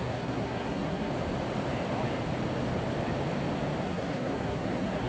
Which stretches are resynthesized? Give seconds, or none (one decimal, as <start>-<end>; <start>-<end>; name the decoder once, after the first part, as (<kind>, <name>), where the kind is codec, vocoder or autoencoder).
0.0-1.1 (codec, SNAC); 3.8-5.1